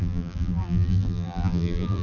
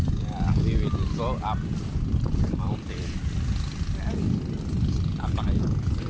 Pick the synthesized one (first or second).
first